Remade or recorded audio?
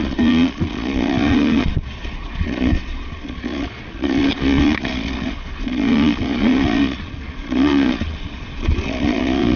remade